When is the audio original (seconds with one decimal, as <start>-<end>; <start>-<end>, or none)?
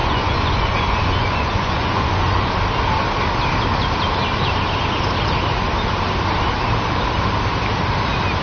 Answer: 2.5-8.4